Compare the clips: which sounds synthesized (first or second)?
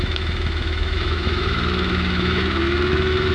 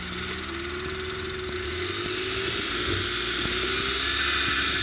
first